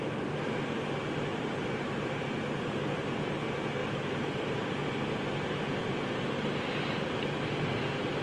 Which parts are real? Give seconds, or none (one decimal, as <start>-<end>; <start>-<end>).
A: 0.0-3.8; 7.1-8.2